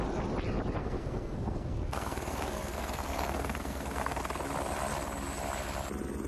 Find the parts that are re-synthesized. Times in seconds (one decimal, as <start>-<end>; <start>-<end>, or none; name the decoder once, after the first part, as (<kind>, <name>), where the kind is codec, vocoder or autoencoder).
0.8-4.2 (codec, SNAC)